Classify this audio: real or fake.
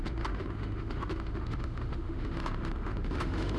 fake